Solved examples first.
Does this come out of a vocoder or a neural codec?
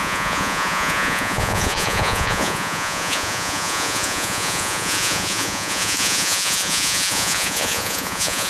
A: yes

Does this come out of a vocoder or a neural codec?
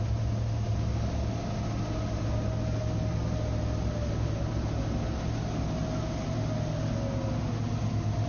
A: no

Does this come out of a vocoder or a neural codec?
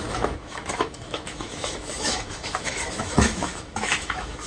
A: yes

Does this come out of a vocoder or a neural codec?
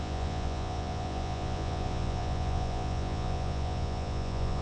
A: yes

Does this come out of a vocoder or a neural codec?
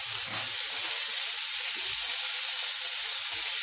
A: no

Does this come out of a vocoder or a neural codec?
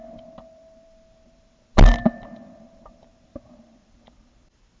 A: yes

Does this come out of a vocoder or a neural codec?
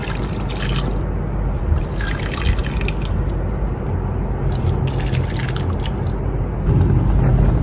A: no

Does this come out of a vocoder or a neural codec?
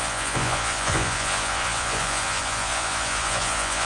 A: yes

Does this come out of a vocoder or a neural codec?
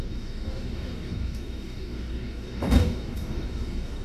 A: yes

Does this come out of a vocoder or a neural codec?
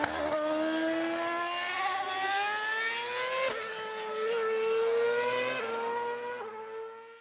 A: no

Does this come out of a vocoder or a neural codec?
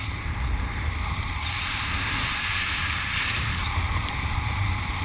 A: yes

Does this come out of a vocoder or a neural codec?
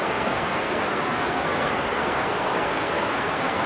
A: yes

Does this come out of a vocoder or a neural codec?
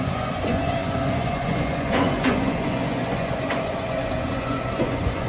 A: yes